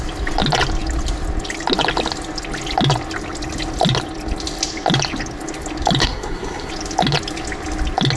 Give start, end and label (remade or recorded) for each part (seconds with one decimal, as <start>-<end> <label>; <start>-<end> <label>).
0.0-6.0 recorded; 6.0-6.7 remade; 6.7-8.2 recorded